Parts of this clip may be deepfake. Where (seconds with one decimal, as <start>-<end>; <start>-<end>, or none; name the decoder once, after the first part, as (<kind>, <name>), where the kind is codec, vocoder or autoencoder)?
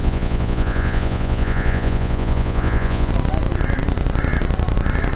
0.0-3.1 (vocoder, Vocos)